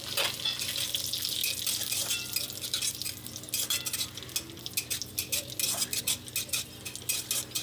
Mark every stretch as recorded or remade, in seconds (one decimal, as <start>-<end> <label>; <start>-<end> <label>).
0.0-7.6 recorded